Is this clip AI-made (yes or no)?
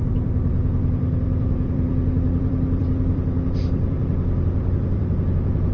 yes